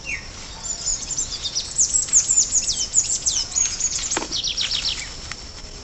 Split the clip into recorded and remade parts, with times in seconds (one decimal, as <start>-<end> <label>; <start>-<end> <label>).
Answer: 0.0-0.9 recorded; 0.9-4.4 remade; 4.4-5.8 recorded

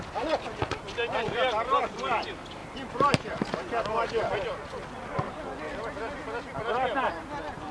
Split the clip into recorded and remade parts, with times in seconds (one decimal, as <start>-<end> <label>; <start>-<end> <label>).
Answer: 0.0-7.7 recorded

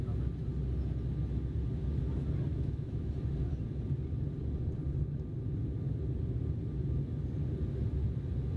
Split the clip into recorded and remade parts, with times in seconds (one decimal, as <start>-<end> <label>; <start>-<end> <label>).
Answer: 0.0-2.5 recorded; 2.5-3.1 remade; 3.1-8.6 recorded

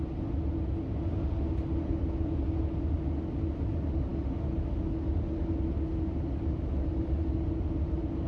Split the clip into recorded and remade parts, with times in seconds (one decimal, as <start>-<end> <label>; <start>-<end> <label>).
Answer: 0.0-8.3 recorded

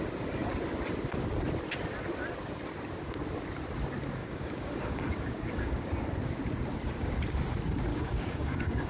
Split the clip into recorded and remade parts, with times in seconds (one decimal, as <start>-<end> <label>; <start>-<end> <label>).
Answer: 0.0-4.2 recorded; 4.2-5.9 remade; 5.9-7.9 recorded; 7.9-8.9 remade

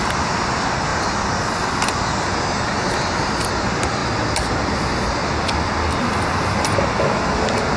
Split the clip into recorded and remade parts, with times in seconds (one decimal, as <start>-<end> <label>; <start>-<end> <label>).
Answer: 0.0-7.8 recorded

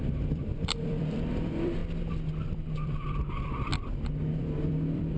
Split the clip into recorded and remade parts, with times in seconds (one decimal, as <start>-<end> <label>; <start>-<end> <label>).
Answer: 0.0-1.8 remade; 1.8-2.5 recorded; 2.5-3.7 remade; 3.7-4.3 recorded; 4.3-5.2 remade